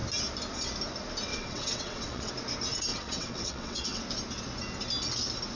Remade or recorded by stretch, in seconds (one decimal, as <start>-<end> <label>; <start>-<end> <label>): 0.0-1.3 recorded; 1.3-2.3 remade; 2.3-2.9 recorded; 2.9-4.0 remade; 4.0-5.6 recorded